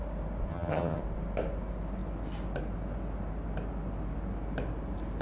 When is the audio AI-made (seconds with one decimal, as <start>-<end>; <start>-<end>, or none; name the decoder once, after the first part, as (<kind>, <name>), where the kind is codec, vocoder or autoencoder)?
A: 0.5-1.0 (vocoder, HiFi-GAN)